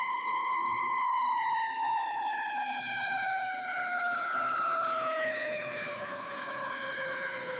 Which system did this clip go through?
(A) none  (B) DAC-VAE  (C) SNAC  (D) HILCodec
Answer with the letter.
D